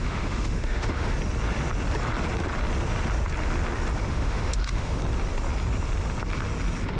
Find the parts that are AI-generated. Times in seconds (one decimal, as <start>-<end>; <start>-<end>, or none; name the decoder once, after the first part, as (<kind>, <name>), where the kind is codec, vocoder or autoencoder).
0.0-1.1 (autoencoder, DAC-VAE); 4.1-5.0